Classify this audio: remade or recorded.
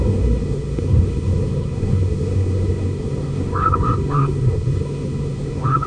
remade